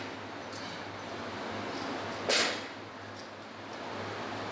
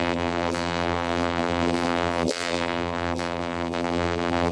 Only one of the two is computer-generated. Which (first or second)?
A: second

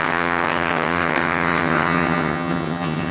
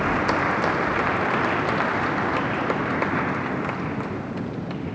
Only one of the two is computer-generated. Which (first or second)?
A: first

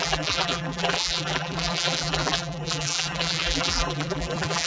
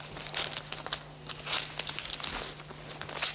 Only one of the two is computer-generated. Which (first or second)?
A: first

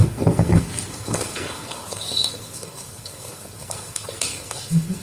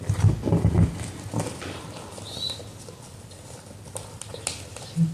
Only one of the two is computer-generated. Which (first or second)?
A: first